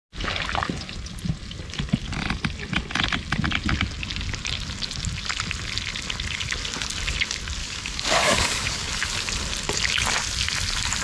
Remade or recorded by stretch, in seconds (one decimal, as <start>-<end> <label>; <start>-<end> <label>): 0.0-7.6 recorded; 7.6-8.9 remade; 8.9-11.0 recorded